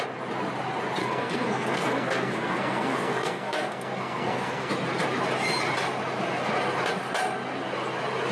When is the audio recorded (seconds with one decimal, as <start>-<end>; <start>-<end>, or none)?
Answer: 0.0-1.0; 4.7-8.3